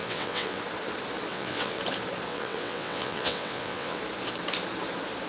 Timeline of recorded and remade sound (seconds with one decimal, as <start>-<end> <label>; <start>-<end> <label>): 0.0-0.6 remade; 0.6-1.3 recorded; 1.3-1.8 remade; 1.8-2.3 recorded; 2.3-4.0 remade; 4.0-5.3 recorded